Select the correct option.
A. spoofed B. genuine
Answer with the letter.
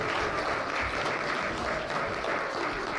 B